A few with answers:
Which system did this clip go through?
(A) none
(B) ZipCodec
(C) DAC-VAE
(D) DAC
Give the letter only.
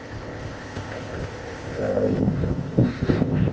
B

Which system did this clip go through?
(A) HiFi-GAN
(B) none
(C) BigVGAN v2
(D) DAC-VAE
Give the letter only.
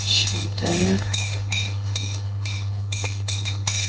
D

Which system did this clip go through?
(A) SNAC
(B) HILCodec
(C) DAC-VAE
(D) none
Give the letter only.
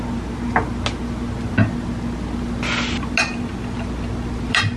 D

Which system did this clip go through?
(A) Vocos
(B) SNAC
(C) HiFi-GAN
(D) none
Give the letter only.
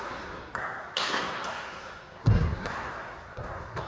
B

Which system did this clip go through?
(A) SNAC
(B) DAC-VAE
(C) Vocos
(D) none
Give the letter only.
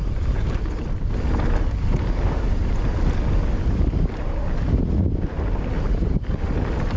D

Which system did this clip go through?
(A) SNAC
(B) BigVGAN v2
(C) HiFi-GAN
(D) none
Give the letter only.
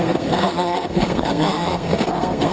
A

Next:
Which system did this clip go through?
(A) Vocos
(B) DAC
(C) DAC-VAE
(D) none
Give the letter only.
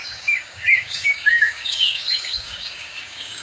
B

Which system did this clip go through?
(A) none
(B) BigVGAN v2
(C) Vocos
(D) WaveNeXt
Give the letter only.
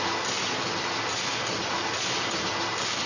A